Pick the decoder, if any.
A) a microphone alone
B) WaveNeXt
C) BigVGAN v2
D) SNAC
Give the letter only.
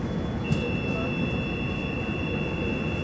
A